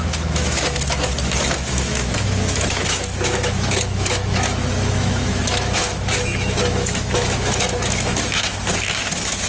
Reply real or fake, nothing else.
fake